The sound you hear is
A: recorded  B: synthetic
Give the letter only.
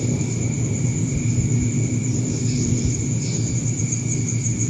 B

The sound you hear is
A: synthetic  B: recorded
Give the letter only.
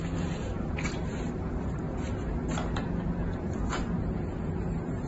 A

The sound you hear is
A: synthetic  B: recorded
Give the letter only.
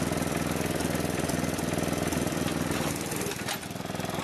A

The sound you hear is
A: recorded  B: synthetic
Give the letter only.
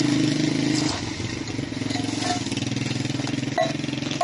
A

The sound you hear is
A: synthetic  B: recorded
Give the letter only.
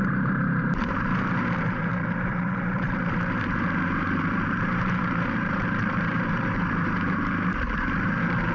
A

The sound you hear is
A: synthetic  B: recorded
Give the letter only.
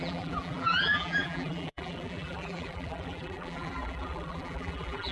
A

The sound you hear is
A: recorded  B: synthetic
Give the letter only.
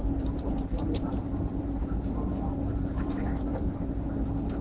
B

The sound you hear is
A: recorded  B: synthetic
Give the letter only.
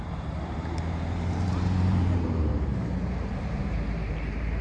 B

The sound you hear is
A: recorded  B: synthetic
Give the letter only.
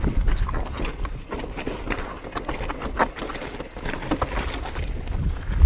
A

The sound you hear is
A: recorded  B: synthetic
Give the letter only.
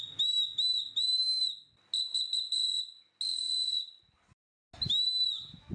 A